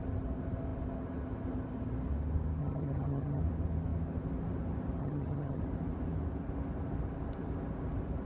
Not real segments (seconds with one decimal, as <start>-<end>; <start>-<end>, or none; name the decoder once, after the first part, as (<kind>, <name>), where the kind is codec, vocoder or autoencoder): 2.6-3.4 (vocoder, HiFi-GAN); 5.0-5.6